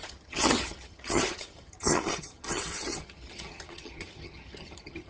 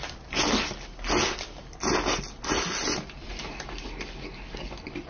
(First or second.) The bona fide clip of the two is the second